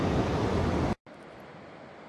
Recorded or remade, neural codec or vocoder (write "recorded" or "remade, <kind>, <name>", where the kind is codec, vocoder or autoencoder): recorded